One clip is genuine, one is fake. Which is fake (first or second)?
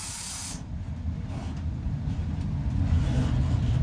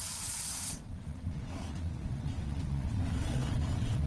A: second